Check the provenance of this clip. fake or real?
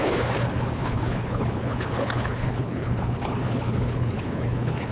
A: fake